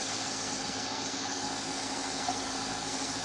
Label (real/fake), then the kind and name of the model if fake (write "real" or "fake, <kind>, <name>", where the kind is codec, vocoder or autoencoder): fake, codec, SNAC